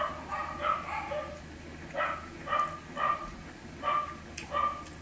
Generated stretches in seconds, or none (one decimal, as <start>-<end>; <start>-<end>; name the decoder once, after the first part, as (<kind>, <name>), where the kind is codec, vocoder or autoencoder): none